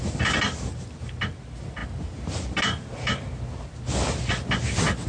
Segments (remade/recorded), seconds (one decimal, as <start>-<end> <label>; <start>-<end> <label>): 0.0-5.1 recorded